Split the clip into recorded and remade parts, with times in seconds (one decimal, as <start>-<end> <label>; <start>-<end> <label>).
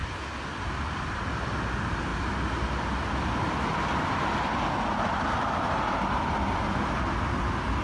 0.0-7.8 recorded